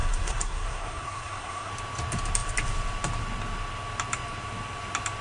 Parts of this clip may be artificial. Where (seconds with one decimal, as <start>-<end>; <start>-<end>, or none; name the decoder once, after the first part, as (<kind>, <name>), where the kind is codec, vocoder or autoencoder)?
0.0-1.7 (codec, SNAC)